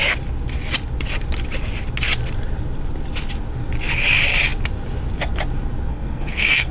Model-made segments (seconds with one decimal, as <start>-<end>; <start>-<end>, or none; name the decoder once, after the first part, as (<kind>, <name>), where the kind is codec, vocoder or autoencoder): 5.9-6.7 (codec, SNAC)